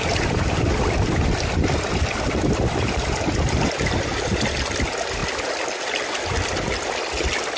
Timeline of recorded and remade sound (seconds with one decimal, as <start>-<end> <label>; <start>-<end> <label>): 0.0-7.6 recorded